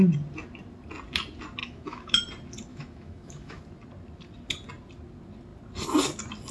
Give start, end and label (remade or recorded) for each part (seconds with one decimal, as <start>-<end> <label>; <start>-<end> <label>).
0.0-1.6 recorded; 1.6-2.2 remade; 2.2-2.7 recorded; 2.7-3.6 remade; 3.6-6.5 recorded